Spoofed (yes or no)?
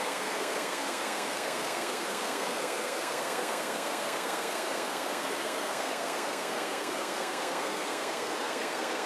yes